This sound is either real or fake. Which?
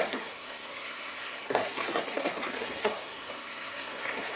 fake